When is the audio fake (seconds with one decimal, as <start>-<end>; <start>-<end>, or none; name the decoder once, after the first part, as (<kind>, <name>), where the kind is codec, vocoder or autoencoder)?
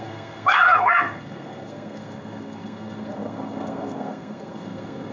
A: 0.0-5.1 (codec, SNAC)